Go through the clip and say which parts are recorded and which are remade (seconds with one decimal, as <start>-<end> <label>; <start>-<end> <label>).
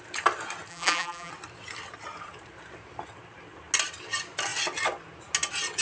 0.0-0.7 recorded; 0.7-1.3 remade; 1.3-5.8 recorded